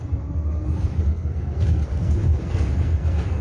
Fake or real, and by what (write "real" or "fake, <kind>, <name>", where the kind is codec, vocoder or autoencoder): fake, codec, SNAC